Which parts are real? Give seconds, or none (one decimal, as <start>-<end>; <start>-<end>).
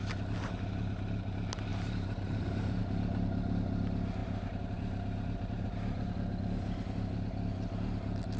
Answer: 0.0-1.7; 2.8-4.2; 6.1-8.4